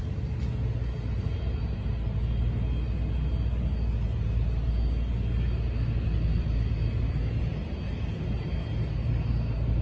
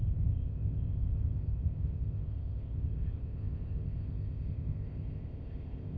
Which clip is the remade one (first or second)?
second